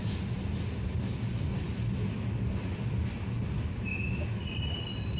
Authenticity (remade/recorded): recorded